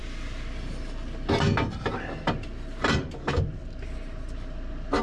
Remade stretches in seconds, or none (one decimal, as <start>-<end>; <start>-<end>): none